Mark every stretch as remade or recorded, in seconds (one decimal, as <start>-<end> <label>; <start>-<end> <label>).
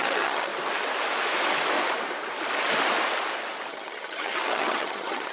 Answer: 0.0-0.5 remade; 0.5-3.7 recorded; 3.7-5.3 remade